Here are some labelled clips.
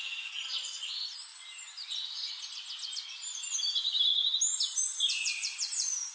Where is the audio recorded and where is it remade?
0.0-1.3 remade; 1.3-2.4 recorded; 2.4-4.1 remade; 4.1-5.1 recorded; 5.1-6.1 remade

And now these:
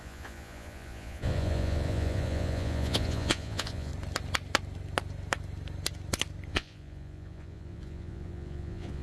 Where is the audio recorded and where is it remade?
0.0-3.9 remade; 3.9-6.5 recorded; 6.5-9.0 remade

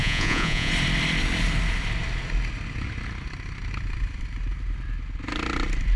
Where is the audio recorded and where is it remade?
0.0-0.7 remade; 0.7-6.0 recorded